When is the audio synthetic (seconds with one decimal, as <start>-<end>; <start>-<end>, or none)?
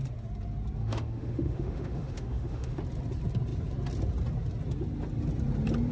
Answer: 0.8-2.8